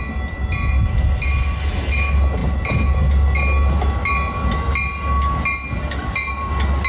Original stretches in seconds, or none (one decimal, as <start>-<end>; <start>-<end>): 0.0-6.9

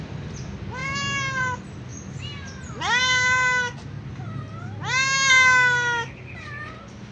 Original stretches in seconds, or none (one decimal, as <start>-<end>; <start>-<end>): 0.0-7.1

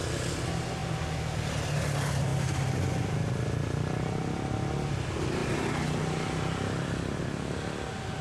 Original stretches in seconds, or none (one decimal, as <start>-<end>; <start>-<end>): 0.0-8.2

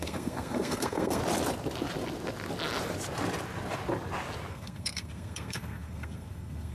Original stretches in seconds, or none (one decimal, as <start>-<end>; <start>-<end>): 1.2-4.5

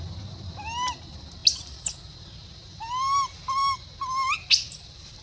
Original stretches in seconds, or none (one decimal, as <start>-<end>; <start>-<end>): 0.0-5.2